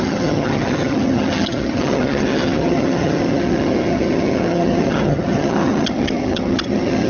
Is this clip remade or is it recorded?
remade